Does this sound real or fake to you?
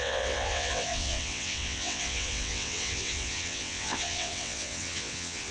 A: fake